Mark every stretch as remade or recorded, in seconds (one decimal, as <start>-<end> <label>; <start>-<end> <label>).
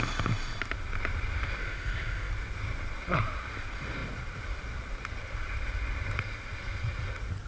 0.0-1.6 recorded; 1.6-2.3 remade; 2.3-7.5 recorded